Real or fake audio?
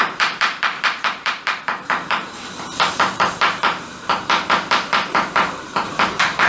fake